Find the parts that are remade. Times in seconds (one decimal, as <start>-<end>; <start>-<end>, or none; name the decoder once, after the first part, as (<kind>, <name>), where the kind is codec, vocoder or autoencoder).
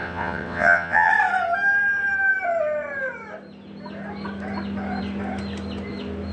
0.0-1.1 (vocoder, WaveNeXt)